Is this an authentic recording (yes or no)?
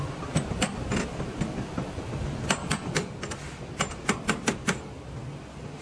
yes